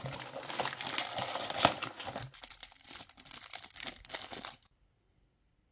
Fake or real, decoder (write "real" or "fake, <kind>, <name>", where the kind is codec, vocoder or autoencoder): real